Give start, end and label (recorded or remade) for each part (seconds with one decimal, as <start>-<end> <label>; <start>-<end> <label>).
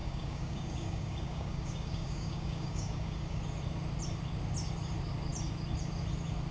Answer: 0.0-3.4 remade; 3.4-6.5 recorded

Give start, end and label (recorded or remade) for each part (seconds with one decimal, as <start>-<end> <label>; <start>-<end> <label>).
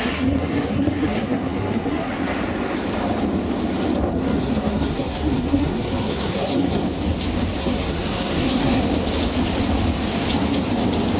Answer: 0.0-2.1 remade; 2.1-4.1 recorded; 4.1-6.8 remade; 6.8-7.6 recorded; 7.6-8.8 remade; 8.8-11.2 recorded